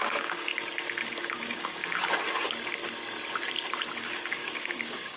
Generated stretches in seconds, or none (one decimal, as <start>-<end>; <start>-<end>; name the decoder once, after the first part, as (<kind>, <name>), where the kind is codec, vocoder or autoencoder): 0.0-0.5 (codec, DAC); 1.1-1.8; 4.0-5.2